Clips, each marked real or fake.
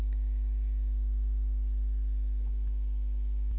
real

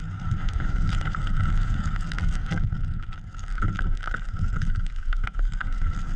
fake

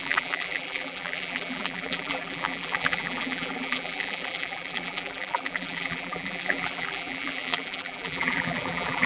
fake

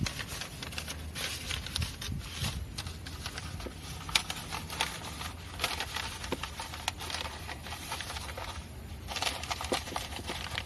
real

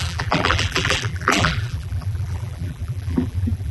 fake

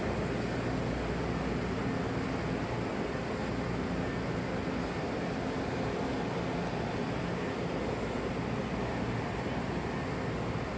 real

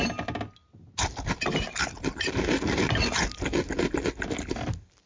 real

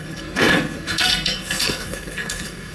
fake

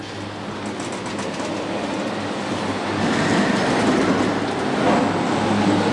real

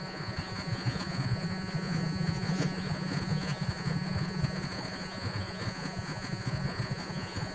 fake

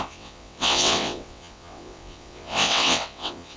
fake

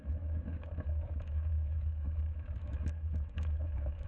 fake